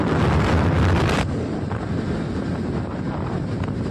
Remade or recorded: recorded